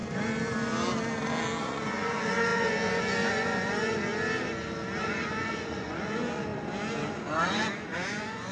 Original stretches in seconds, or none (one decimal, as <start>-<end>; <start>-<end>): 0.0-1.6; 4.1-5.0; 6.5-7.3